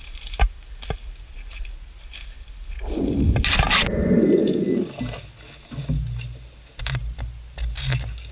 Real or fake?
real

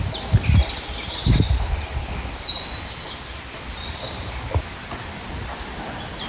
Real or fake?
real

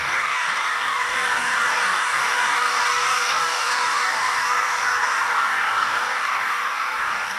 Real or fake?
fake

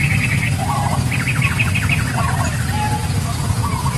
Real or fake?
real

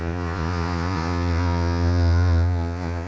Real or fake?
fake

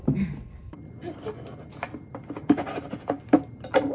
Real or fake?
real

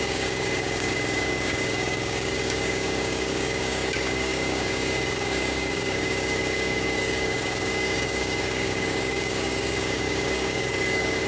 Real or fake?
fake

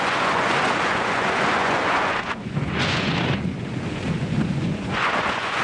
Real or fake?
fake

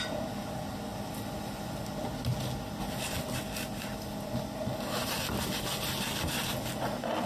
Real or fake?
real